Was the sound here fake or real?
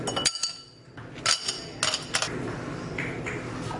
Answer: real